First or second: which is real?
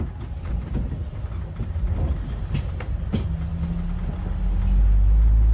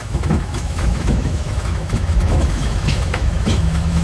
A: first